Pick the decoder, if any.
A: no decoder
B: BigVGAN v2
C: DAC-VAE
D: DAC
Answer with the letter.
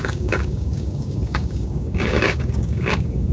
D